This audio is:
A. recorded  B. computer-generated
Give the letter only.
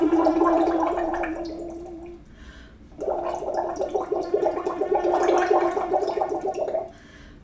A